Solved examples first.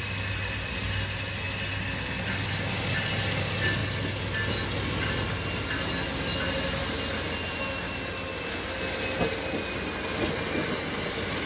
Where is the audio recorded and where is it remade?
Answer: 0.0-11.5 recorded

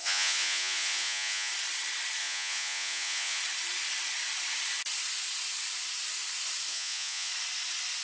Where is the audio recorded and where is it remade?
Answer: 0.0-1.5 remade; 1.5-2.2 recorded; 2.2-3.4 remade; 3.4-6.7 recorded; 6.7-7.3 remade; 7.3-8.0 recorded

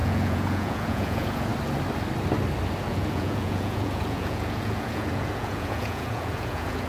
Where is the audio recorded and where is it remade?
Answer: 0.0-1.5 remade; 1.5-2.9 recorded; 2.9-6.9 remade

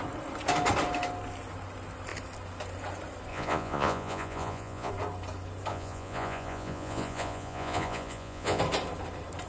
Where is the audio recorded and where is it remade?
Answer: 0.0-3.3 recorded; 3.3-4.9 remade; 4.9-5.7 recorded; 5.7-8.6 remade; 8.6-9.5 recorded

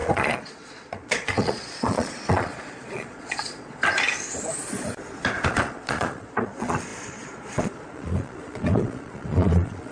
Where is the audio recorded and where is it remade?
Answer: 0.0-3.8 remade; 3.8-5.5 recorded; 5.5-9.9 remade

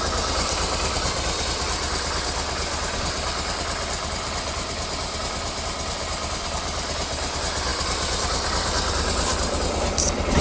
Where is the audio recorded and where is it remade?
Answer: 0.0-10.4 recorded

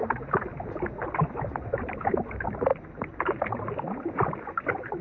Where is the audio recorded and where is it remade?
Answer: 0.0-5.0 recorded

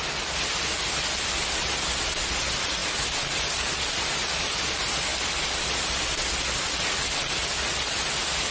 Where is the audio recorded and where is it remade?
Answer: 0.0-8.5 recorded